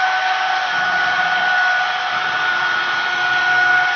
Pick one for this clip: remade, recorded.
recorded